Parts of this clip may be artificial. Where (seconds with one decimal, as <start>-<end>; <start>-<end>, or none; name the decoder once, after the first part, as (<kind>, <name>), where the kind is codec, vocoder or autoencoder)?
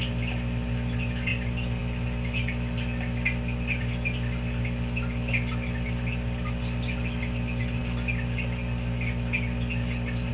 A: none